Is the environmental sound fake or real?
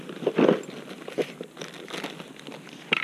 real